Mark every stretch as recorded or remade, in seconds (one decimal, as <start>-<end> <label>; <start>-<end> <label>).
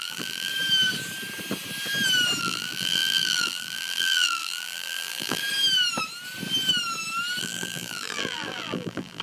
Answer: 0.0-0.5 remade; 0.5-2.4 recorded; 2.4-5.4 remade; 5.4-7.4 recorded; 7.4-9.2 remade